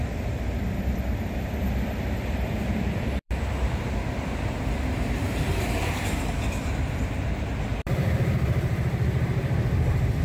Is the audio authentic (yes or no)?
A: no